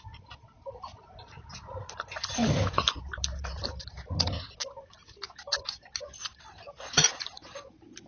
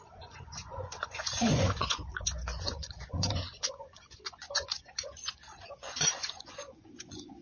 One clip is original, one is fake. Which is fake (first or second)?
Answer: second